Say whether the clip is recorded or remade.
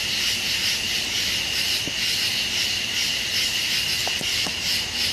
recorded